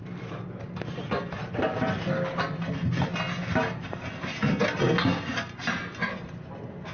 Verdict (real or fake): real